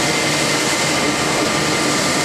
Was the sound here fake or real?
real